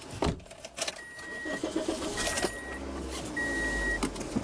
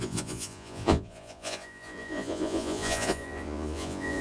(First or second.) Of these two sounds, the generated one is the second